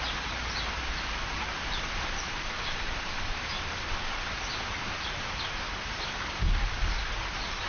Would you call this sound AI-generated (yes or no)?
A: yes